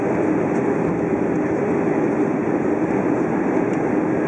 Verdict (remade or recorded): recorded